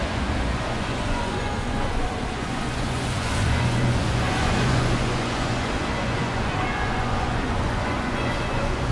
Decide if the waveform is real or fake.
fake